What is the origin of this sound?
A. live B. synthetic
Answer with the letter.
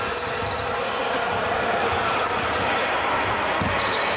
A